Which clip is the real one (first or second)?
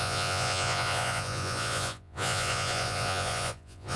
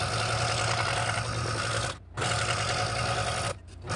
second